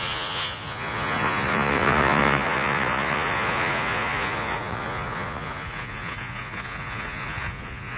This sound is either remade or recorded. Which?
remade